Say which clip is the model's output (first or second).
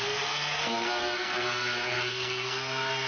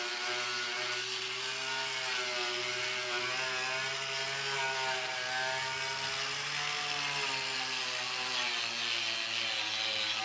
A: first